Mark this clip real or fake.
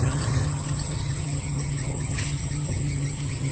fake